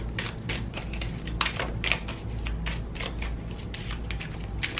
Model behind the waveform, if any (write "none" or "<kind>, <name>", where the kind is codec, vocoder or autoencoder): none